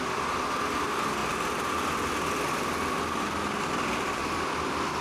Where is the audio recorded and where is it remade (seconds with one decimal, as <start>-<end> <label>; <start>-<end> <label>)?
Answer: 0.0-5.0 recorded